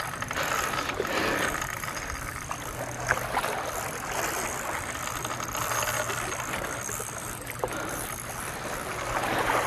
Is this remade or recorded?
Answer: recorded